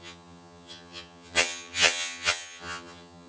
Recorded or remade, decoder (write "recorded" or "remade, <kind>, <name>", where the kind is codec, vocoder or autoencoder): remade, vocoder, HiFi-GAN